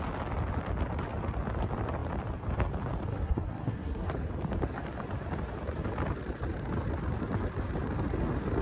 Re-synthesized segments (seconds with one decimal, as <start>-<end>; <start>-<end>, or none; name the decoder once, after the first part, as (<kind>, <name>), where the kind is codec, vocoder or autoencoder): 3.1-4.1 (codec, SNAC)

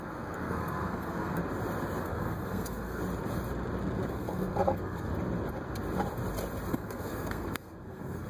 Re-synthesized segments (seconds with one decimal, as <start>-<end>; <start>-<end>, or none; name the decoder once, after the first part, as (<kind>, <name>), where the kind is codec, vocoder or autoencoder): 0.0-1.4 (codec, SNAC); 2.0-3.0; 4.1-5.1; 6.7-8.3

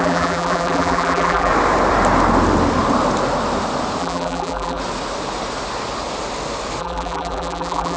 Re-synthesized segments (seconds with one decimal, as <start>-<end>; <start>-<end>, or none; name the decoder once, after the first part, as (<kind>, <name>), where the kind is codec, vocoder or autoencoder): 0.0-1.5 (vocoder, BigVGAN v2); 4.0-4.8; 6.8-8.0

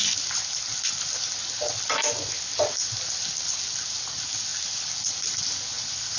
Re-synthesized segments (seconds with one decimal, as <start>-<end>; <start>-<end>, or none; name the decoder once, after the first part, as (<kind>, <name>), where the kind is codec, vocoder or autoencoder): none

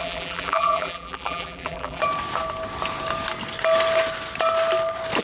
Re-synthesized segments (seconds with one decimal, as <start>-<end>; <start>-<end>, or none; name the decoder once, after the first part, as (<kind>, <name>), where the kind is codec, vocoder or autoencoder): 0.0-2.0 (vocoder, BigVGAN v2)

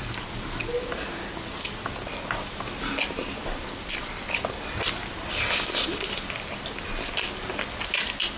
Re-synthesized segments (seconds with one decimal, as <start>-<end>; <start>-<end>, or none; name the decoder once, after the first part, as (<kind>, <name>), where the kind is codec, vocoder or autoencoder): none

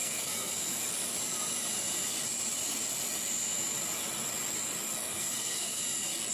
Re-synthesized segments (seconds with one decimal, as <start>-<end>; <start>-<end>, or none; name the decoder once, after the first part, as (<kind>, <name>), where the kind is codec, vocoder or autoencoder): 0.0-0.8 (codec, SNAC); 5.1-5.8